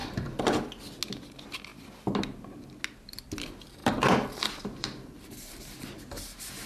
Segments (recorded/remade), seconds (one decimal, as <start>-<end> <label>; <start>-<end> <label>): 0.0-0.8 remade; 0.8-3.8 recorded; 3.8-5.6 remade; 5.6-6.7 recorded